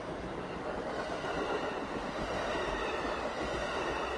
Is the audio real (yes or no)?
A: yes